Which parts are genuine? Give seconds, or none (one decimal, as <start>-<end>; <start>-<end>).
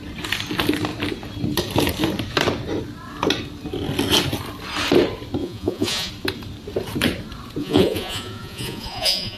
0.0-5.4; 6.1-7.6